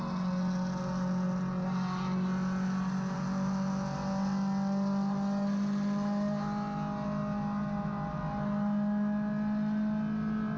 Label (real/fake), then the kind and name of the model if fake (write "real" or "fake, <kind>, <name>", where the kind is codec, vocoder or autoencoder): real